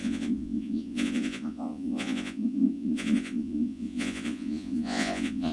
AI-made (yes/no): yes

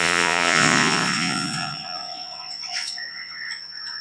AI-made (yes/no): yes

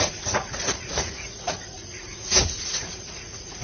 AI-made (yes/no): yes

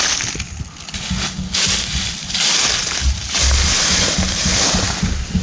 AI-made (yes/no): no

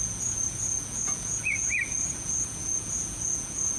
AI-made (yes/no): yes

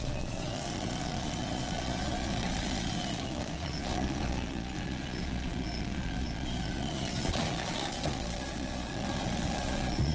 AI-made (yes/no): yes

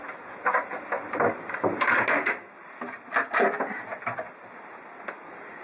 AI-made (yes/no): no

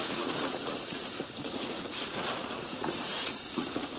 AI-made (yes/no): yes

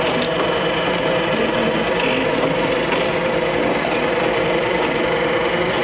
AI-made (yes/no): no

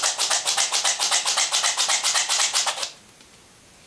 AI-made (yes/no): no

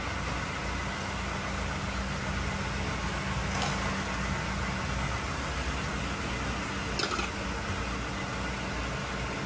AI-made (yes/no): no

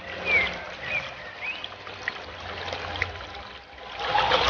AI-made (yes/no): no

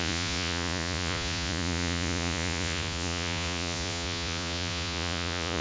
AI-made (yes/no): yes